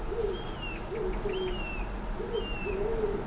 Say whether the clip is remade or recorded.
recorded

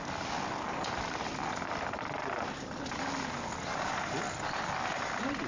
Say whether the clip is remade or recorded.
recorded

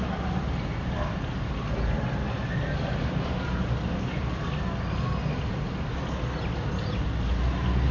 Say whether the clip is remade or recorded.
recorded